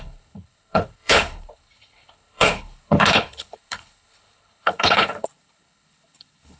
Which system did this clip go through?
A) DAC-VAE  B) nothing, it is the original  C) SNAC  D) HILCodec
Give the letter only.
D